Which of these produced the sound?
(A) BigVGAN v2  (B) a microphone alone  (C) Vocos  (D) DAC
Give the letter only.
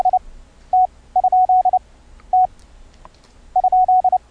B